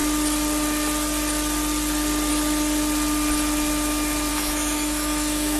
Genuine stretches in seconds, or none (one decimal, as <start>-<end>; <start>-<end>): 0.0-4.3